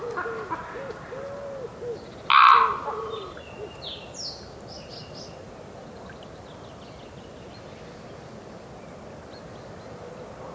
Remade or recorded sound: recorded